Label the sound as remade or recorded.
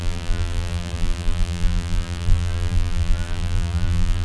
remade